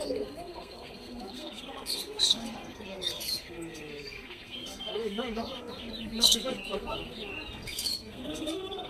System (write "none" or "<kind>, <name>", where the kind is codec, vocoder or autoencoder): codec, SNAC